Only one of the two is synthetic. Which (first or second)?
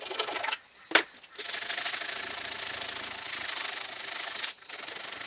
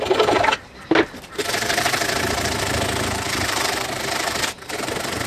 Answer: second